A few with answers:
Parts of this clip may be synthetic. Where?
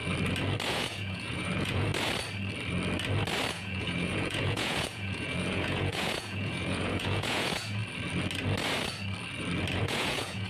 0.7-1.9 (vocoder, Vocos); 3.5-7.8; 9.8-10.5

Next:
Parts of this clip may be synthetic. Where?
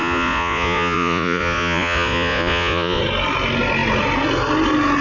0.0-3.0 (vocoder, Vocos)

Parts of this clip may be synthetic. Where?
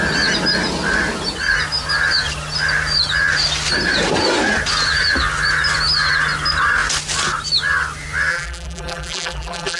8.3-9.8 (vocoder, BigVGAN v2)